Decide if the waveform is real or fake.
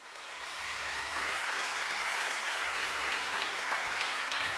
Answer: fake